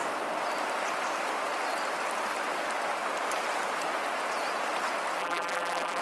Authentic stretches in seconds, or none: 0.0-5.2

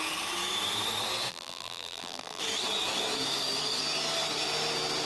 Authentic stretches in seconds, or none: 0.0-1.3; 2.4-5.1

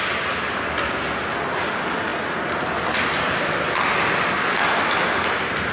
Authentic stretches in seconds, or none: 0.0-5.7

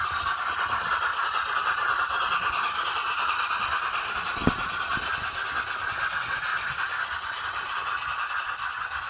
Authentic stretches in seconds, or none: 6.5-8.3

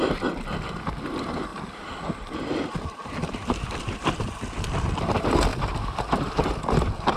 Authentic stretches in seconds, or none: 0.0-1.5; 4.3-5.5; 6.4-7.2

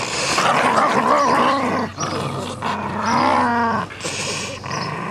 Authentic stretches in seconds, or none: 1.9-2.9; 3.5-4.2

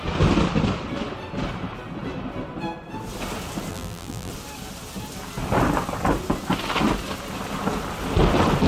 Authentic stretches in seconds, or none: 0.0-3.7; 4.3-8.7